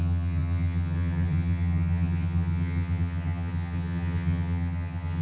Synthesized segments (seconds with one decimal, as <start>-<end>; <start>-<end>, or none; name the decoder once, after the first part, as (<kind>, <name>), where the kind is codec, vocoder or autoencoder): 0.0-5.2 (vocoder, HiFi-GAN)